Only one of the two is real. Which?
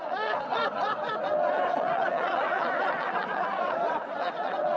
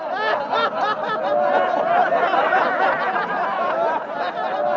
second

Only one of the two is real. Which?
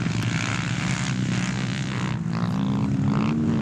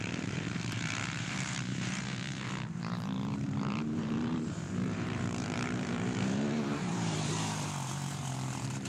first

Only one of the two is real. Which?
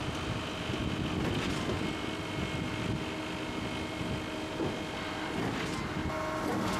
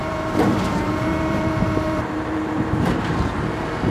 first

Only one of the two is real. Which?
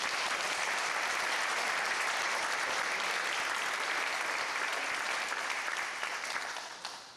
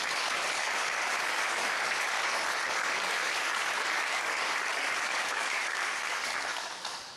first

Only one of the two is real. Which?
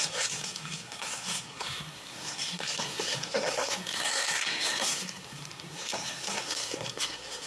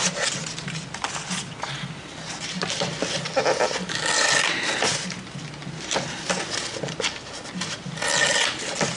second